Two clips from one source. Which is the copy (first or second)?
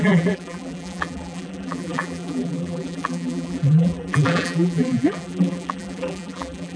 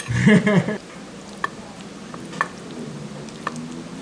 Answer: first